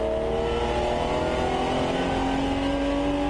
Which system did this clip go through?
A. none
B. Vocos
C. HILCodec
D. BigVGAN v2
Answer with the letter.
A